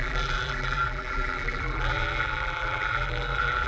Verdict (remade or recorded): remade